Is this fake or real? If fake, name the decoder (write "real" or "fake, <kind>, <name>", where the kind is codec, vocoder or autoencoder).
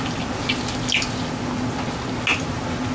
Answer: real